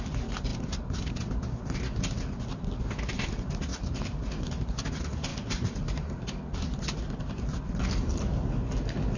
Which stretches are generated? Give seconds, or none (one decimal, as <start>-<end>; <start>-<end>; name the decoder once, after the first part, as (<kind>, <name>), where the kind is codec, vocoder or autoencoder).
0.5-1.1 (vocoder, BigVGAN v2); 3.7-4.4; 5.3-6.0